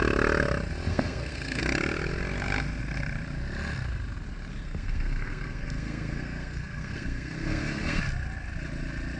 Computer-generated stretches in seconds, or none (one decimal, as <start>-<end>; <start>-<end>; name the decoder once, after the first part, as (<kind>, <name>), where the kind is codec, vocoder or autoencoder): 0.9-1.6 (codec, SNAC); 4.5-8.0